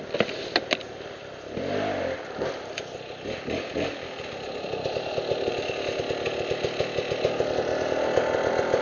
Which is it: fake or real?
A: real